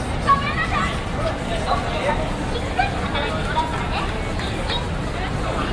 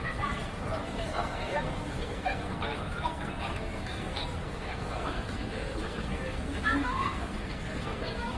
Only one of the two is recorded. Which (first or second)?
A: first